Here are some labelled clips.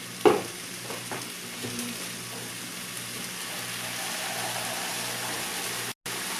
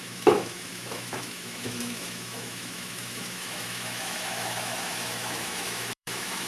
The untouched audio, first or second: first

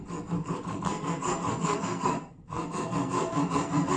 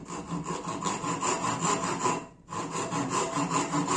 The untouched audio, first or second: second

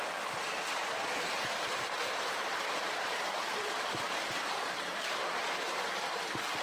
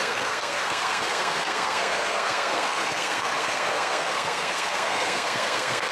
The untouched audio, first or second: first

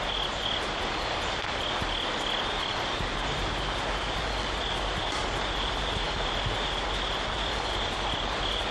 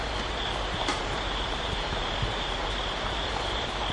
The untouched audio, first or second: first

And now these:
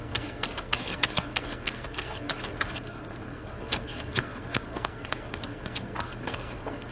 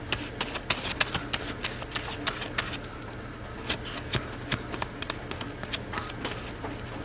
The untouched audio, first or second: second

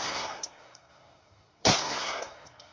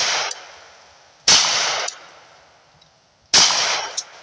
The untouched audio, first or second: second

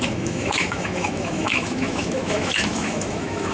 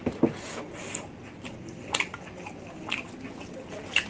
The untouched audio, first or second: second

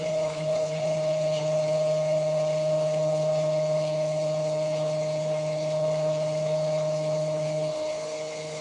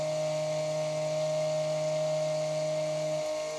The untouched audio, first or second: second